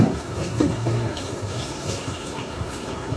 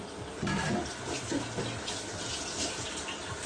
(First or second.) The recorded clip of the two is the second